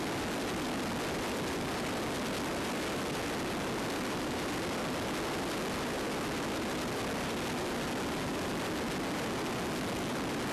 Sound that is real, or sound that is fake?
real